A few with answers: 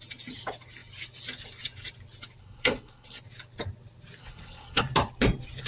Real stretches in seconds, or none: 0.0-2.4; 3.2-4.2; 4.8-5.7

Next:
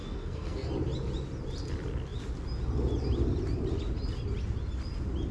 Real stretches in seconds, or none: 0.7-5.3

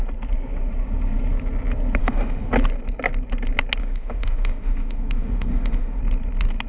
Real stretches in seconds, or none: 0.0-2.0; 2.5-3.8; 6.0-6.7

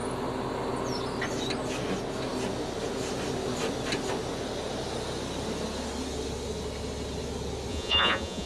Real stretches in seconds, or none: 0.0-7.7

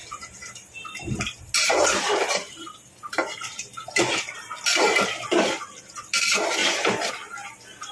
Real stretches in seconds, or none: 1.2-1.6; 5.0-6.6; 7.1-7.9